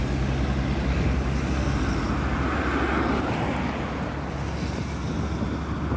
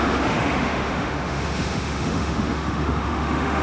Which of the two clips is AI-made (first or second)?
second